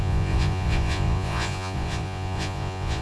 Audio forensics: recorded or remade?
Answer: remade